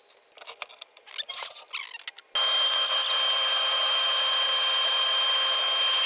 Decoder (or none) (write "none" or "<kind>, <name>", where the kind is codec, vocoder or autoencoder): none